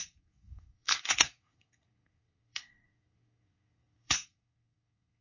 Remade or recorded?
remade